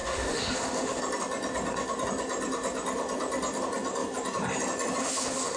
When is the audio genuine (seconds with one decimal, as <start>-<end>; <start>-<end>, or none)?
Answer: 1.0-5.0